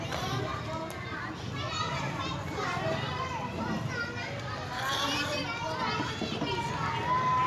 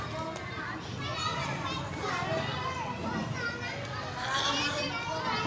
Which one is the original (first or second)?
second